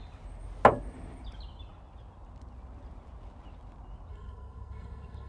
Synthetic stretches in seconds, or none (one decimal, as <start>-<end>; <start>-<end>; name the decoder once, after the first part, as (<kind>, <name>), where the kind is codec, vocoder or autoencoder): 4.1-5.3 (codec, SNAC)